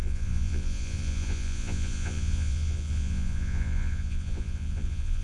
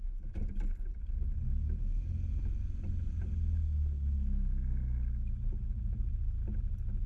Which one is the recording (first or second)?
second